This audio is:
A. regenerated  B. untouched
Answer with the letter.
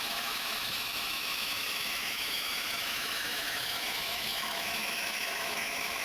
A